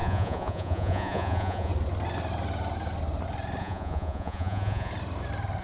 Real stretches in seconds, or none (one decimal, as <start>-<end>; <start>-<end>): 1.7-3.6; 4.9-5.6